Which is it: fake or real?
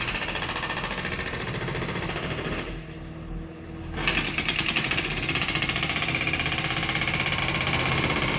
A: real